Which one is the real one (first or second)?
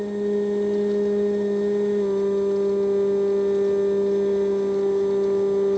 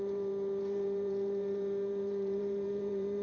first